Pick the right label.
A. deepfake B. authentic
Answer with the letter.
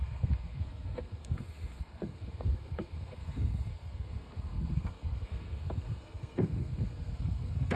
A